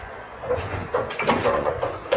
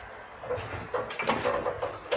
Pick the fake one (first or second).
first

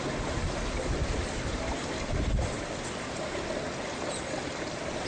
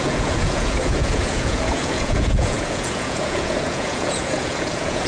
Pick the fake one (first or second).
second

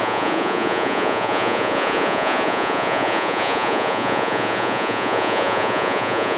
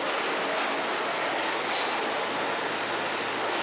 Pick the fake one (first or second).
first